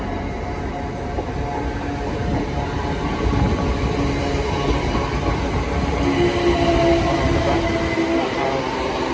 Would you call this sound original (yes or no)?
yes